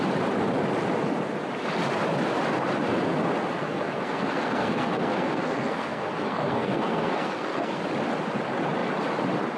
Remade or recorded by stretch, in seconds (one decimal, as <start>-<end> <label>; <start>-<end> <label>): 0.0-3.6 recorded; 3.6-7.8 remade; 7.8-9.6 recorded